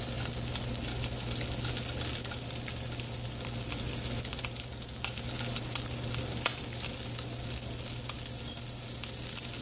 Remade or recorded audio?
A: recorded